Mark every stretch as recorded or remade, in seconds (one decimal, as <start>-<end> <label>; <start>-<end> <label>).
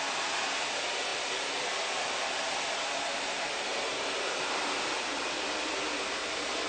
0.0-6.7 recorded